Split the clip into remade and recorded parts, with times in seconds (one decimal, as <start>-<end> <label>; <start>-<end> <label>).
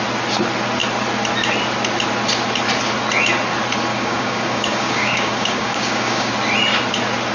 0.0-3.9 recorded; 3.9-6.3 remade; 6.3-7.3 recorded